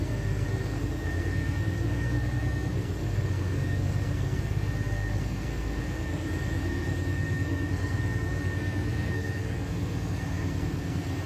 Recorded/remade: remade